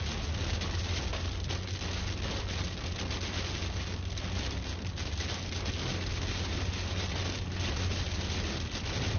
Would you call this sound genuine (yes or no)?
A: yes